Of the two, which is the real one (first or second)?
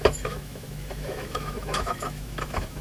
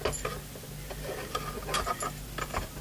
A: second